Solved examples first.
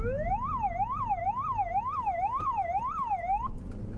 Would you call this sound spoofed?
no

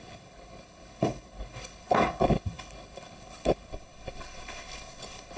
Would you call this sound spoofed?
yes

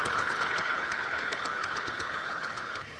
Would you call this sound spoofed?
yes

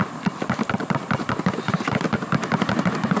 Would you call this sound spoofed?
no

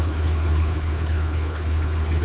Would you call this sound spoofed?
yes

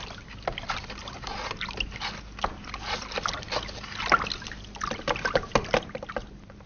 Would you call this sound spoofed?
no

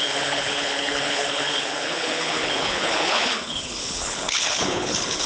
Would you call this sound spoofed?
yes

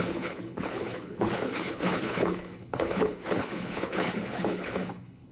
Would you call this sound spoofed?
yes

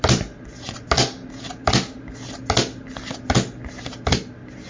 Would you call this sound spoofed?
no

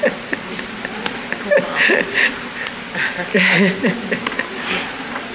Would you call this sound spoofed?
no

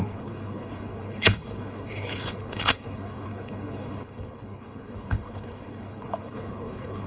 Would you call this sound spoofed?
yes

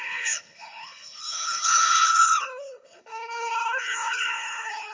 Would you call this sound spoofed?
yes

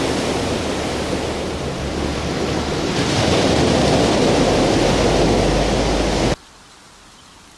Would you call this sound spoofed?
no